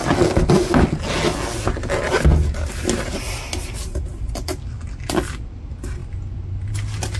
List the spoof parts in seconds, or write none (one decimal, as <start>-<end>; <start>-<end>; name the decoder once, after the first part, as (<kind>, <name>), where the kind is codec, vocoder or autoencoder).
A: none